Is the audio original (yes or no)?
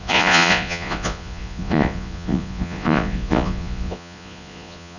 no